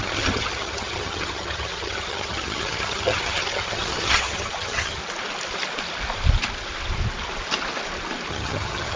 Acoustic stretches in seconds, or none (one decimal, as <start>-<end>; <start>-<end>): 5.0-8.3